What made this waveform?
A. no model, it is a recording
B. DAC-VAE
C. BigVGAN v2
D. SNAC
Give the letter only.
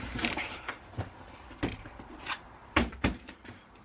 C